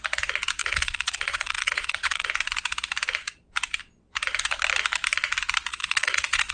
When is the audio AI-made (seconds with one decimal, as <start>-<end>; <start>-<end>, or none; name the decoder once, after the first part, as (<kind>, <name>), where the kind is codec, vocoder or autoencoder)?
0.6-2.3 (vocoder, Vocos); 5.7-6.5